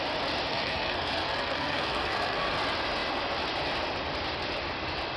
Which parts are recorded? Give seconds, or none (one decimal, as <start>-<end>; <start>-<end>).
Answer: 0.0-0.5; 2.5-5.2